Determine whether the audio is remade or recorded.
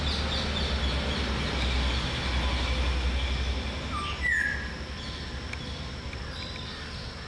recorded